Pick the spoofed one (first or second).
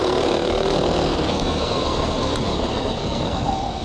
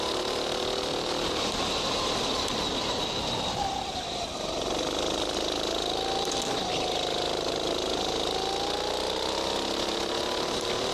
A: first